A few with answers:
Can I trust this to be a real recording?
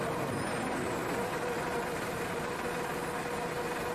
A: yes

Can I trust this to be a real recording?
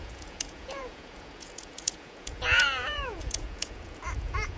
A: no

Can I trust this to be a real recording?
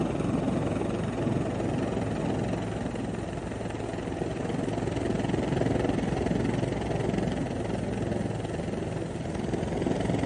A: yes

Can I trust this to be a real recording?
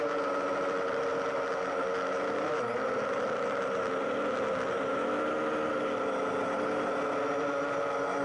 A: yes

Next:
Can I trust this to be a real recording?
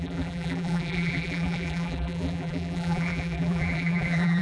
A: no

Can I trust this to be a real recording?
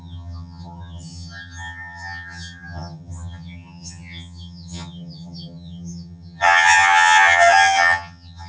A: no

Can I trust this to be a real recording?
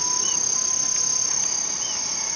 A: yes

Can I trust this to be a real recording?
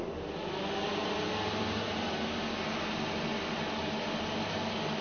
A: yes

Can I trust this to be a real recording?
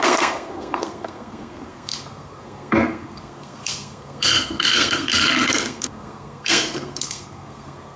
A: no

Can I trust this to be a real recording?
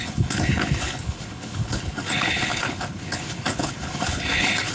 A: no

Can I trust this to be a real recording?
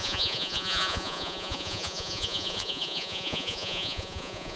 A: no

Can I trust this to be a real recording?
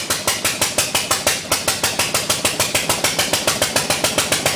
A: yes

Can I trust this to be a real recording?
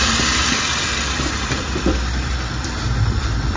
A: no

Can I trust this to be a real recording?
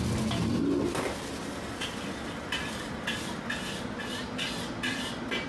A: yes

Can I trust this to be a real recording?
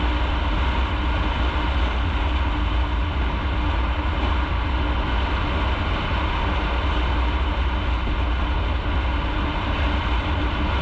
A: yes